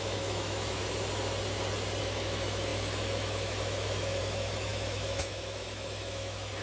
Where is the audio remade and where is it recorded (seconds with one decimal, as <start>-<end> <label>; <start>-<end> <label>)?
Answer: 0.0-0.8 remade; 0.8-2.0 recorded; 2.0-6.6 remade